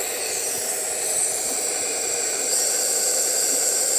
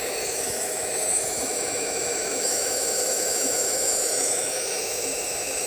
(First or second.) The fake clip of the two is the second